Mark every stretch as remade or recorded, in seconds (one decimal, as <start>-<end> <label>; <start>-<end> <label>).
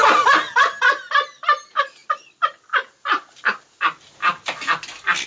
0.0-5.3 recorded